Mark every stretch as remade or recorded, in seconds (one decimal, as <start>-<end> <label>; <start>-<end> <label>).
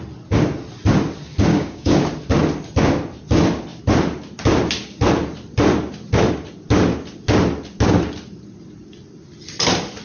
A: 0.0-1.5 recorded; 1.5-2.0 remade; 2.0-10.0 recorded